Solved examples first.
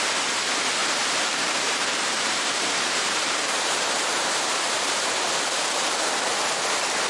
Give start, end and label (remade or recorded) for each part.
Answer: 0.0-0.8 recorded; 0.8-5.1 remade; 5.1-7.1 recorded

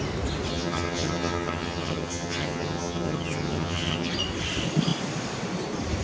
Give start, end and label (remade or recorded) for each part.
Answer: 0.0-0.5 recorded; 0.5-4.1 remade; 4.1-6.0 recorded

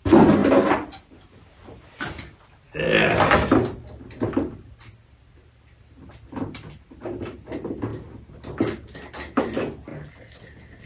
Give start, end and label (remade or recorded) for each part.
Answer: 0.0-10.9 recorded

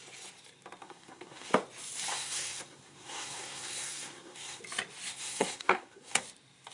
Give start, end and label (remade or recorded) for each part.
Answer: 0.0-0.8 recorded; 0.8-1.5 remade; 1.5-2.1 recorded; 2.1-4.6 remade; 4.6-5.1 recorded; 5.1-6.2 remade; 6.2-6.7 recorded

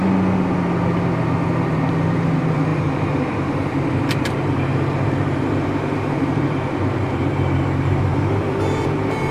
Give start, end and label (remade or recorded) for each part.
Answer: 0.0-0.9 recorded; 0.9-9.3 remade

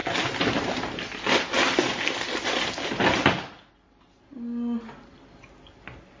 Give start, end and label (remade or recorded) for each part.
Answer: 0.0-6.2 recorded

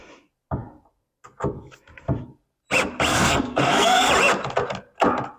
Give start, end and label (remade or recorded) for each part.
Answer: 0.0-3.1 recorded; 3.1-4.1 remade; 4.1-5.4 recorded

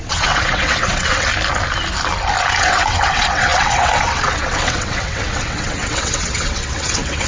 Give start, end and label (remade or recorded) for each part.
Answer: 0.0-1.3 remade; 1.3-2.6 recorded; 2.6-7.3 remade